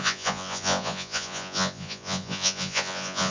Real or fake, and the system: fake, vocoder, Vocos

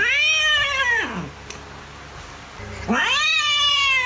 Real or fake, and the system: real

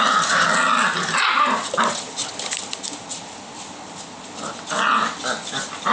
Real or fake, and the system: real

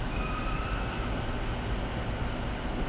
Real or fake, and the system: real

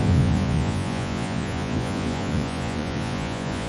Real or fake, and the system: fake, vocoder, Vocos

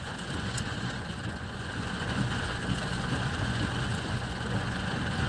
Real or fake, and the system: fake, vocoder, Vocos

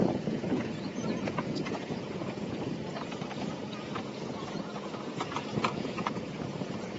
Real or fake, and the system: fake, vocoder, Vocos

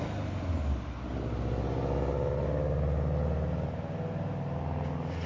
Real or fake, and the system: real